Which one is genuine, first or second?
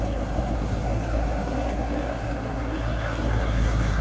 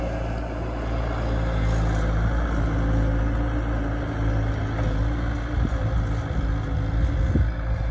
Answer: second